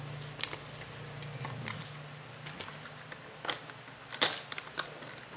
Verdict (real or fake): real